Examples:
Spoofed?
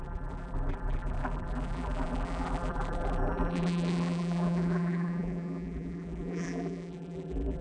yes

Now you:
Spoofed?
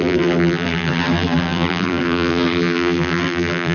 yes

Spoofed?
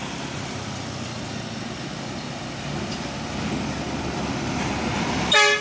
no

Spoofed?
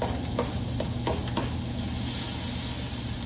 no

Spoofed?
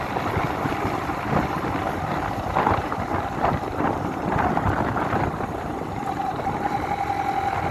yes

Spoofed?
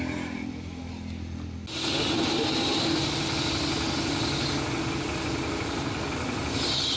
no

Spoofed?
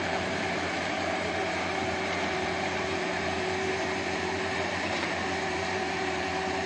yes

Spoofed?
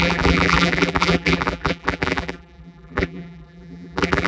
yes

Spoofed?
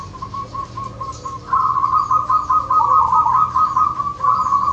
no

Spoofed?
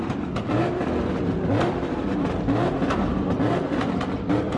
yes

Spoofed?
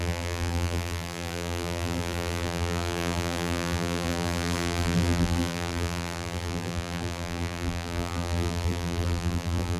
yes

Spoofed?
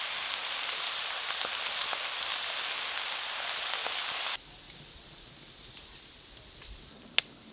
no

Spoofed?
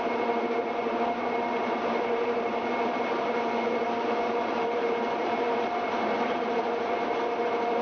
yes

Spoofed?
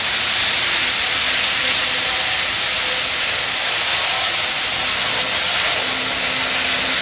no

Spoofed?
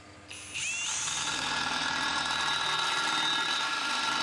no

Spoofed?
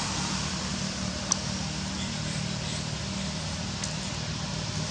yes